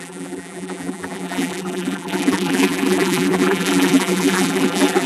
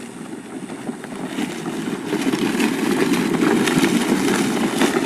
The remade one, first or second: first